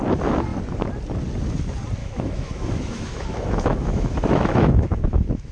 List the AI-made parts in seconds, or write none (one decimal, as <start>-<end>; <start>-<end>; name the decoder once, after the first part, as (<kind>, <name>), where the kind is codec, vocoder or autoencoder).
2.0-5.5 (autoencoder, DAC-VAE)